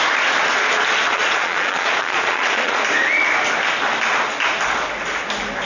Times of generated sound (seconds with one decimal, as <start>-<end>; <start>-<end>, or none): 1.1-2.8